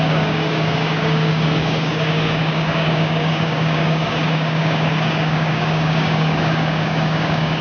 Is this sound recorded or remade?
remade